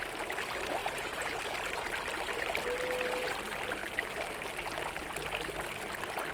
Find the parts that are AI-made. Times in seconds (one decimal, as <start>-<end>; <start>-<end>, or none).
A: 0.8-1.4